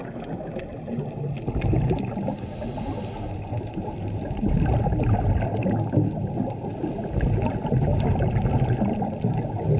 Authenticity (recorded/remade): recorded